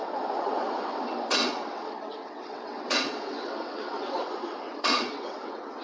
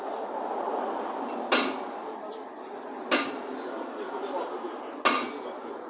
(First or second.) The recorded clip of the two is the second